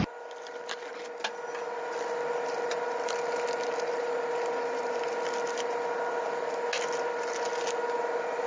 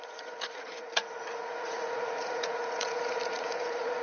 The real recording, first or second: first